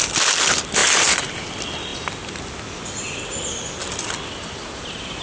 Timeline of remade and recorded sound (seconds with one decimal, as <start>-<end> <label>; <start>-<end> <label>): 0.0-5.2 recorded